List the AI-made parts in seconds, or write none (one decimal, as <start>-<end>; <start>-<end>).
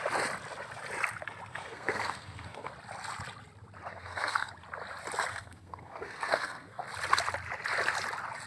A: 1.5-2.7; 3.9-4.5; 5.3-6.8